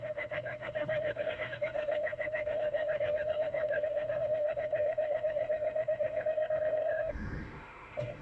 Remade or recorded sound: remade